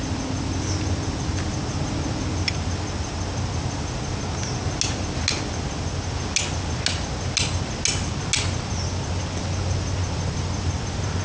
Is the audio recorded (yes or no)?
yes